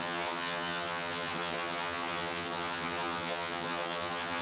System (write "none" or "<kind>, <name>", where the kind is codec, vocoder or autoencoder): vocoder, HiFi-GAN